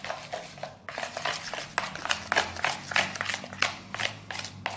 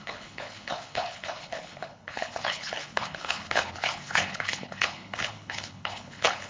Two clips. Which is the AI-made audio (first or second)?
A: second